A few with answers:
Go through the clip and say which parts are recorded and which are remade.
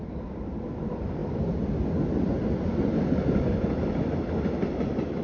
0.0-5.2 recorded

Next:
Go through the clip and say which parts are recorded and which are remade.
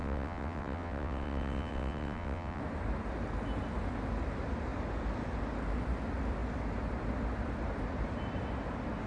0.0-2.6 remade; 2.6-9.1 recorded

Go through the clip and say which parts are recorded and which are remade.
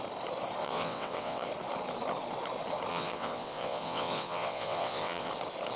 0.0-0.6 recorded; 0.6-1.5 remade; 1.5-2.9 recorded; 2.9-5.3 remade; 5.3-5.8 recorded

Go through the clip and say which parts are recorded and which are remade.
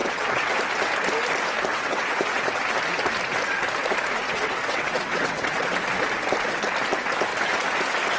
0.0-0.6 remade; 0.6-1.7 recorded; 1.7-2.6 remade; 2.6-4.3 recorded; 4.3-5.7 remade; 5.7-8.2 recorded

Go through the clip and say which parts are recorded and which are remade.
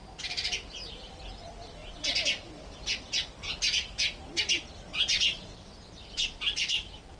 0.0-4.9 recorded; 4.9-5.7 remade; 5.7-7.2 recorded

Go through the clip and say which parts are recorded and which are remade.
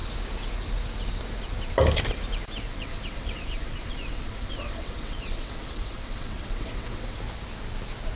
0.0-2.7 recorded; 2.7-7.2 remade; 7.2-8.2 recorded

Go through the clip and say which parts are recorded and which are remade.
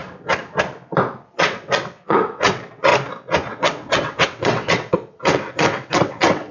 0.0-1.4 recorded; 1.4-2.9 remade; 2.9-3.5 recorded; 3.5-6.5 remade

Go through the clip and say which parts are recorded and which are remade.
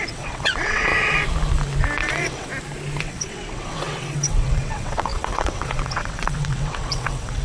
0.0-0.9 remade; 0.9-2.0 recorded; 2.0-2.5 remade; 2.5-3.0 recorded; 3.0-7.4 remade